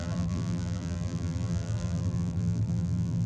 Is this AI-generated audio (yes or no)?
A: yes